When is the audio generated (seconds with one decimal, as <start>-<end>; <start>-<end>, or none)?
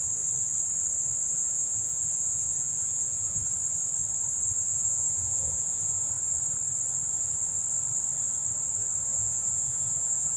1.3-3.4; 4.7-6.1; 9.1-10.4